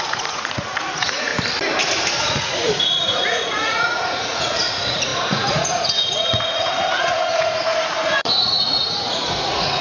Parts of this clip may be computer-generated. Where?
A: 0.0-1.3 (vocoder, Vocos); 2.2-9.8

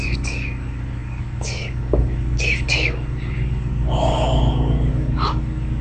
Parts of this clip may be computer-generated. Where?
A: 0.0-5.8 (codec, DAC)

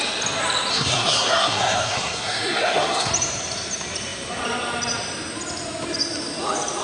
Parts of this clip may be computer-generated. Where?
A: 0.7-3.1 (codec, SNAC)

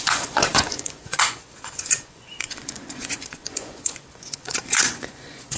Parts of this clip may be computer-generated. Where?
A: 0.0-5.6 (vocoder, Vocos)

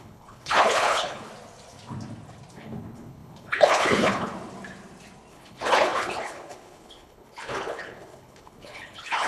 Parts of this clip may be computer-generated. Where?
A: 0.0-1.3 (codec, HILCodec); 2.5-4.3; 5.3-9.3

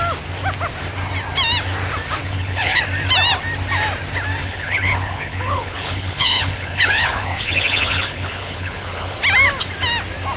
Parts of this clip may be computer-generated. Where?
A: 2.2-2.8 (codec, HILCodec); 4.4-9.2